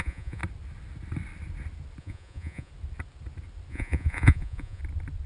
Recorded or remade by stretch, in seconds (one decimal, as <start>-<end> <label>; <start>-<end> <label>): 0.0-0.4 remade; 0.4-2.0 recorded; 2.0-2.7 remade; 2.7-3.7 recorded; 3.7-4.8 remade; 4.8-5.3 recorded